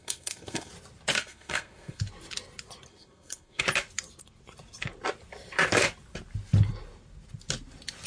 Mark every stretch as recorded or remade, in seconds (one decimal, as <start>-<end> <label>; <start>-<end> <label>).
0.0-0.7 remade; 0.7-1.2 recorded; 1.2-2.0 remade; 2.0-2.9 recorded; 2.9-3.6 remade; 3.6-8.1 recorded